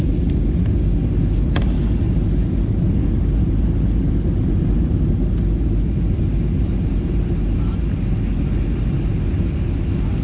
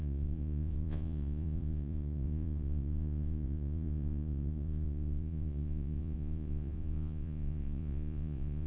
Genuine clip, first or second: first